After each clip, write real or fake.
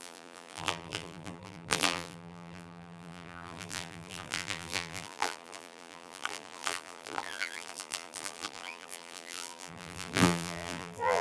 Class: fake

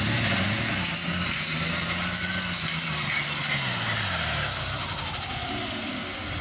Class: real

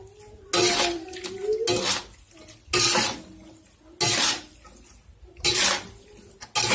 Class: real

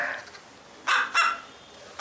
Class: real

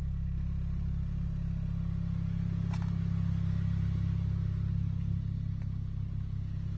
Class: real